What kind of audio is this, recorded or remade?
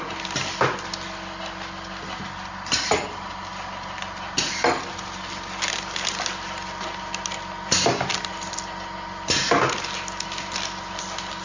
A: recorded